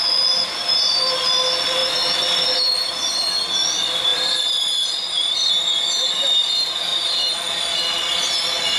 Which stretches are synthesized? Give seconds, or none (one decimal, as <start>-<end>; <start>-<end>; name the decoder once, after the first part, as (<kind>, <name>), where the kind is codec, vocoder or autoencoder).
4.1-5.5 (vocoder, BigVGAN v2)